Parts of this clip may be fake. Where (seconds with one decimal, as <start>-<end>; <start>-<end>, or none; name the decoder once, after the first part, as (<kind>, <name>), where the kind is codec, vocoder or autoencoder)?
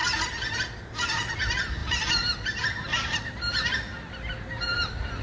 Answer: 1.8-3.5 (vocoder, BigVGAN v2)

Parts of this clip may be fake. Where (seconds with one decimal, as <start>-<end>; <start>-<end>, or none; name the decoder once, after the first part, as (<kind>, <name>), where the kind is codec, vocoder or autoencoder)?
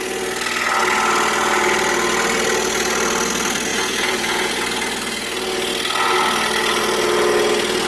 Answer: 3.7-4.5 (vocoder, Vocos)